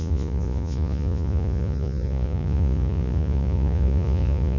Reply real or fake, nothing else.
fake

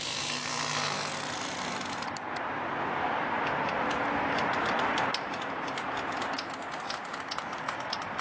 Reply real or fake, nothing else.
real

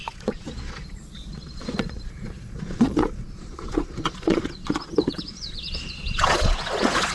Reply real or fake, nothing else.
fake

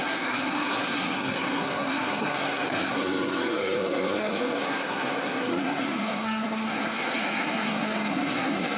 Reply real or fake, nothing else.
fake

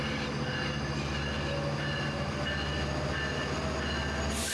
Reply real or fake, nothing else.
real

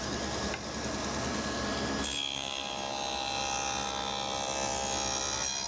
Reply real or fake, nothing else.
real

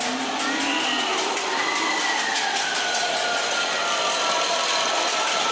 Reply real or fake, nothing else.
real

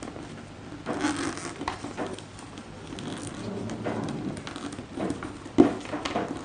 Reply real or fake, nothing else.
real